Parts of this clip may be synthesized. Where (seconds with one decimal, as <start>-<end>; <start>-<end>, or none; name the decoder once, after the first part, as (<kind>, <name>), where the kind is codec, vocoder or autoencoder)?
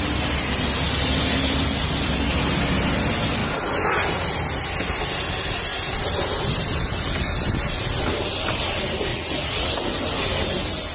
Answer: 9.1-9.7 (vocoder, Vocos)